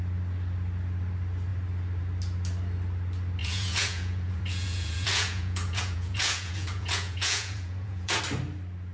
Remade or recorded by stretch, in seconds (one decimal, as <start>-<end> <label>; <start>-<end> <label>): 0.0-3.4 recorded; 3.4-8.2 remade; 8.2-8.9 recorded